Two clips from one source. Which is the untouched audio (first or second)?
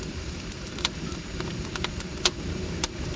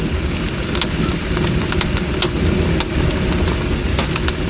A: second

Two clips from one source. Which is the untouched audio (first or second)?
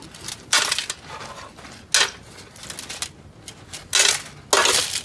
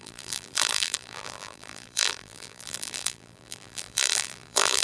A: first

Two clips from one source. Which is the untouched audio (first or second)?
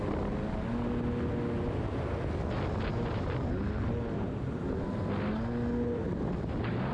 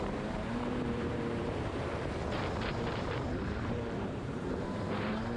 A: first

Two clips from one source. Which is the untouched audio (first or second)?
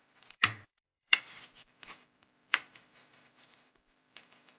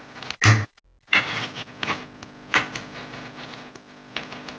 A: second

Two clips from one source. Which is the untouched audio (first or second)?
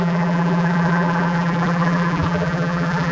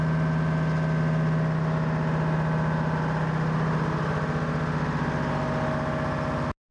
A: second